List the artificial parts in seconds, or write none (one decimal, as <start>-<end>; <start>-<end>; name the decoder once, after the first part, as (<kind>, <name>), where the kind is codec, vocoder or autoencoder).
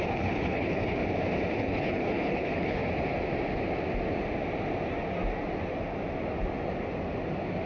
0.0-1.0 (codec, HILCodec); 1.6-2.8